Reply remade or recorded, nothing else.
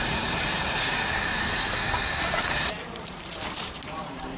remade